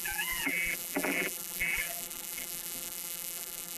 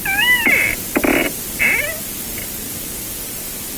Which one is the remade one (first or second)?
first